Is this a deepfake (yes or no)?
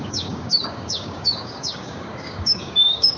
yes